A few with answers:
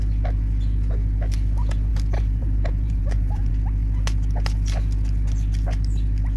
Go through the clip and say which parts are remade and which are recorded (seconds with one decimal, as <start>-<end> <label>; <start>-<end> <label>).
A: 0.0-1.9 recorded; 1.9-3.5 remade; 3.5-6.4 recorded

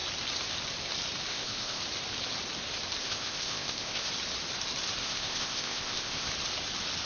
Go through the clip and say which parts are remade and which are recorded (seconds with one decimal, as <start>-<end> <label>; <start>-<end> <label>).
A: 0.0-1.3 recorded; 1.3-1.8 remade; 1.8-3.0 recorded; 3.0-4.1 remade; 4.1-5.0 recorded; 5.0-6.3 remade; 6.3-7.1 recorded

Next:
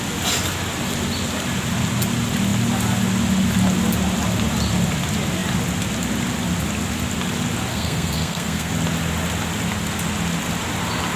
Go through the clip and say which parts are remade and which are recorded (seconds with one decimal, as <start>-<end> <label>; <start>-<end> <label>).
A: 0.0-7.7 recorded; 7.7-8.7 remade; 8.7-11.2 recorded

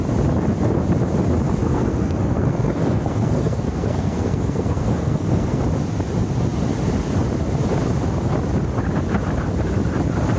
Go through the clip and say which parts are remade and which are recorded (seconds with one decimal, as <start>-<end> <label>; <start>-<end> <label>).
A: 0.0-1.6 recorded; 1.6-5.6 remade; 5.6-10.4 recorded